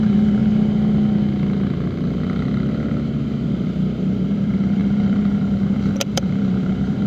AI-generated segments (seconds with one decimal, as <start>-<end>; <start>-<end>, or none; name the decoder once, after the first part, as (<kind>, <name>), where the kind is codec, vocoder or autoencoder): 0.0-0.4 (vocoder, BigVGAN v2); 4.0-7.1